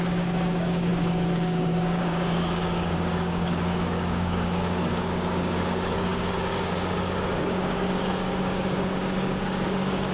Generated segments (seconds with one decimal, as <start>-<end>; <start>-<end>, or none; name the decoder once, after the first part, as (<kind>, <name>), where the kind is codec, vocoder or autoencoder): 0.0-10.1 (codec, DAC)